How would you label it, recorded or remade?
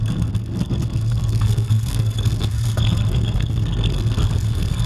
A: remade